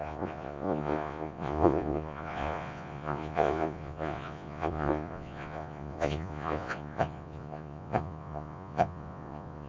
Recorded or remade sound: remade